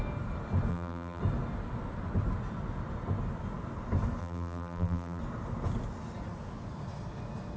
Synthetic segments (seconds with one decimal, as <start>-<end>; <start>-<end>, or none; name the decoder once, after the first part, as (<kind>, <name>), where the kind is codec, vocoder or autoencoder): 0.7-1.2 (vocoder, BigVGAN v2); 4.2-5.2